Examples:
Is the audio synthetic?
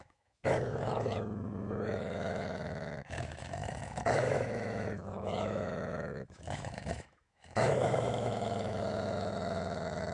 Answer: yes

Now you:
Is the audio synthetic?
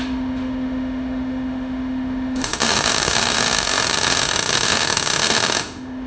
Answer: yes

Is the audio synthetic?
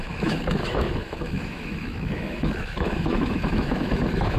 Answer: yes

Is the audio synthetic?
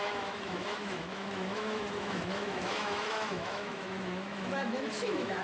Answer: yes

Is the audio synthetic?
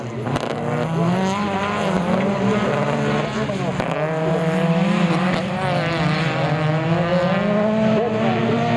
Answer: no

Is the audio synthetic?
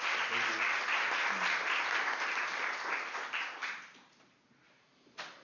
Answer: no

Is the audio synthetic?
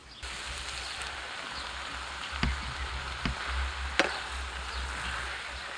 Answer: no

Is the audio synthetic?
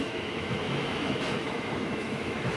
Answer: yes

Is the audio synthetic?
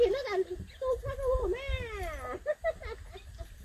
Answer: no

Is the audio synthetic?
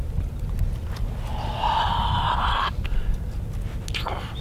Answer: no